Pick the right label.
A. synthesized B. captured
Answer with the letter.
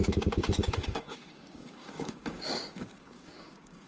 A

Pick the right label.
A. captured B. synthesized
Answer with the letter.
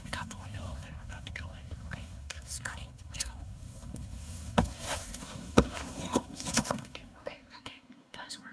B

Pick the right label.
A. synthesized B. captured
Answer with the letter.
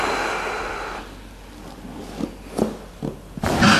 B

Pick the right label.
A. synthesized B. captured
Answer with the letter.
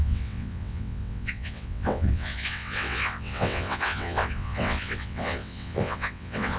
A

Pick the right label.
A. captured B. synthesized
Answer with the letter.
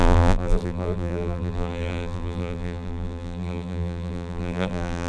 B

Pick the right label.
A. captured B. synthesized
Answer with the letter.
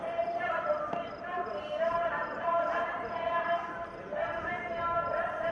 B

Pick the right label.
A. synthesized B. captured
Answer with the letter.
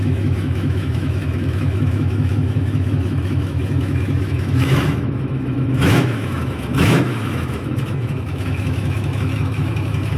A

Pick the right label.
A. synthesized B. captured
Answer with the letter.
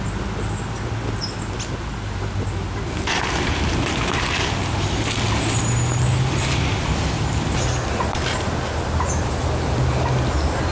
B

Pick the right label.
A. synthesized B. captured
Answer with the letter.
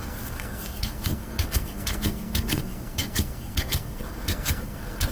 A